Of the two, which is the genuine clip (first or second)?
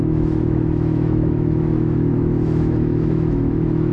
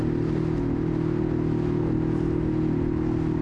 second